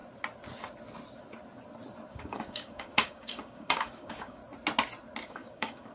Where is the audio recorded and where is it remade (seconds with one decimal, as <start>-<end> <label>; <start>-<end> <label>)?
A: 0.0-2.1 recorded; 2.1-4.4 remade; 4.4-5.3 recorded; 5.3-5.9 remade